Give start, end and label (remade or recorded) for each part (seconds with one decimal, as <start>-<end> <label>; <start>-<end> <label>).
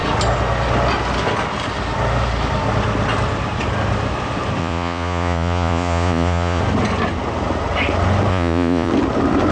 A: 0.0-4.6 recorded; 4.6-6.6 remade; 6.6-8.3 recorded; 8.3-8.9 remade; 8.9-9.5 recorded